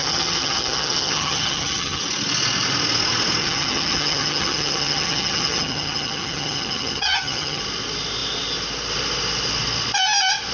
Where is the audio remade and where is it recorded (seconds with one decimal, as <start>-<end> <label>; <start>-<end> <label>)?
0.0-2.0 remade; 2.0-3.4 recorded; 3.4-7.6 remade; 7.6-10.5 recorded